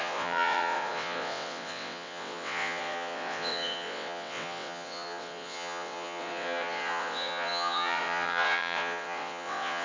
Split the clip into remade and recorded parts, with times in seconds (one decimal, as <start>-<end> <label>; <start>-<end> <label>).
0.0-9.8 remade